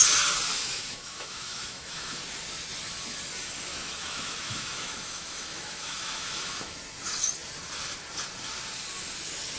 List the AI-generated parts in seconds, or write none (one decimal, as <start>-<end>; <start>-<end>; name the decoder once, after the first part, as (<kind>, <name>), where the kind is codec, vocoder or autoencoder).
0.6-2.2 (autoencoder, DAC-VAE); 3.7-6.8